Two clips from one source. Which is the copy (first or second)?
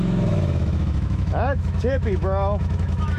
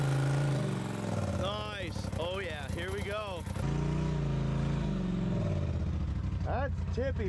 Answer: first